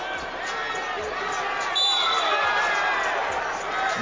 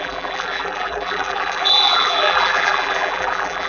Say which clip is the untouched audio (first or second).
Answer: first